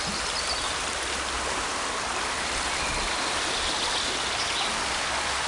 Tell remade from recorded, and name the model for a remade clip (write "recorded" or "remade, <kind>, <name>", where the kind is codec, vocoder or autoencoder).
recorded